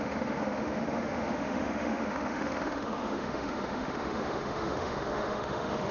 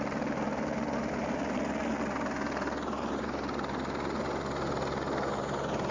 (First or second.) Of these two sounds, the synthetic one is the first